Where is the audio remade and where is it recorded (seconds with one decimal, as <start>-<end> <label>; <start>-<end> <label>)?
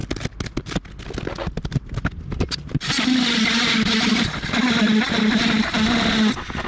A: 0.0-6.7 recorded